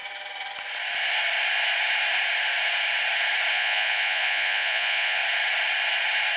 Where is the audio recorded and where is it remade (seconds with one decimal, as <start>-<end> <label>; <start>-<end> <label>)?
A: 0.0-3.5 recorded; 3.5-5.2 remade; 5.2-6.4 recorded